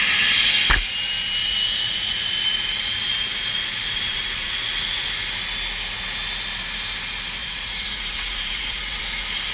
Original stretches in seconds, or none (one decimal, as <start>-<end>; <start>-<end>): 0.0-1.4; 5.1-7.4; 9.0-9.5